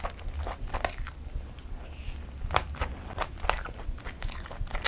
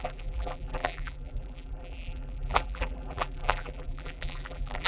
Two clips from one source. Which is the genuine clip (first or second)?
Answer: first